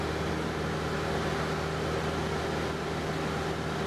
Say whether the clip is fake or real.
real